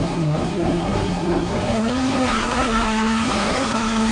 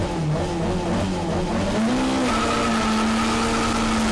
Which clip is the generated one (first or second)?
first